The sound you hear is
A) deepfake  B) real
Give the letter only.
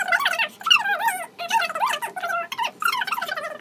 B